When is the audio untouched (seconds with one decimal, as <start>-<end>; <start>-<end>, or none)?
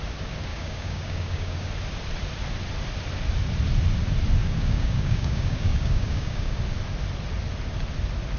0.0-0.5; 1.7-4.4; 6.6-8.4